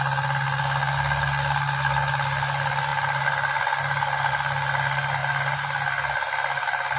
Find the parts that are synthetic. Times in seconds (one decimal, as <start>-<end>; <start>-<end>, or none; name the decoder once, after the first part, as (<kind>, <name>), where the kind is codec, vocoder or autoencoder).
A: none